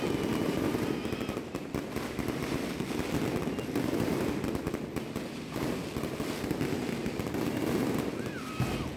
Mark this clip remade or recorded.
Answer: recorded